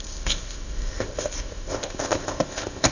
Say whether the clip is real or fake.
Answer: fake